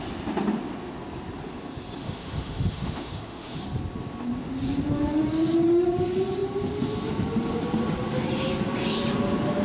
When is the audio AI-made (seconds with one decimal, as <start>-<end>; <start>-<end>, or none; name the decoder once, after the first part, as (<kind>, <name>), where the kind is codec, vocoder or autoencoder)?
2.0-3.6 (autoencoder, DAC-VAE)